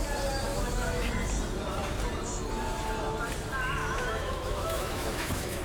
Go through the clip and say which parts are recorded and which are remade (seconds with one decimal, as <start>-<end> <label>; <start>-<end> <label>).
0.0-0.5 recorded; 0.5-1.1 remade; 1.1-3.8 recorded; 3.8-5.6 remade